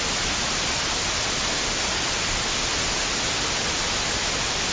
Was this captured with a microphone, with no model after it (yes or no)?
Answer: yes